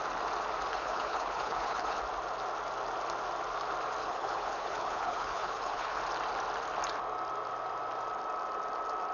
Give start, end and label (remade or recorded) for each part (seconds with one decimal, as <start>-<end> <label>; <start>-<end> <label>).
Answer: 0.0-0.7 recorded; 0.7-2.0 remade; 2.0-4.0 recorded; 4.0-6.0 remade; 6.0-9.1 recorded